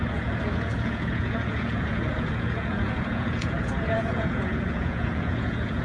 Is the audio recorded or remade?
remade